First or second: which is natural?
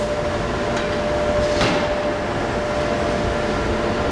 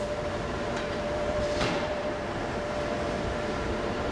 first